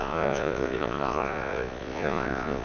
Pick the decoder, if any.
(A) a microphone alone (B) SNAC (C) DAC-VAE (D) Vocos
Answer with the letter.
D